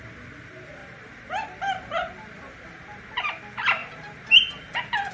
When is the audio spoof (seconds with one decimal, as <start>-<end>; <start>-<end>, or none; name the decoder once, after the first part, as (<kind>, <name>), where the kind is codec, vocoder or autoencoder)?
0.8-3.3 (vocoder, BigVGAN v2); 3.8-5.1